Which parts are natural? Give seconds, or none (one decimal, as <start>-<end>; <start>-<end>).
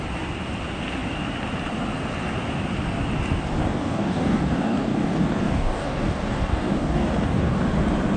0.0-3.6; 7.6-8.2